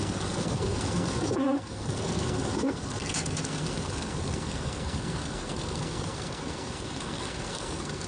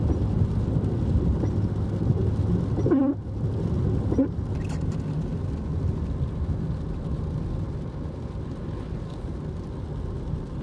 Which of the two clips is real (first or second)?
second